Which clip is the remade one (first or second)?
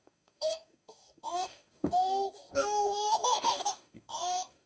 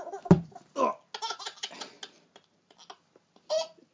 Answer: first